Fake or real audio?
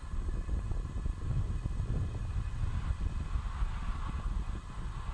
real